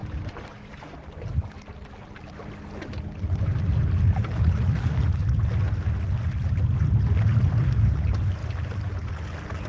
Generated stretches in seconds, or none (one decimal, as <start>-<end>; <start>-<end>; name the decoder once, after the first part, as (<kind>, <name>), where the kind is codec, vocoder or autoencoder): none